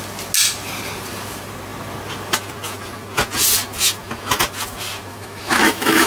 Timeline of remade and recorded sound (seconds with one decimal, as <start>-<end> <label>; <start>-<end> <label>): 0.0-5.1 recorded; 5.1-6.1 remade